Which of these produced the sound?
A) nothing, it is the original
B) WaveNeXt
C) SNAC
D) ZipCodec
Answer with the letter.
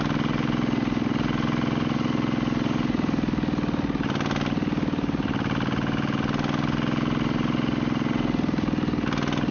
A